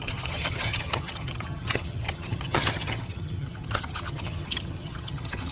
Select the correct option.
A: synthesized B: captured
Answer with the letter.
A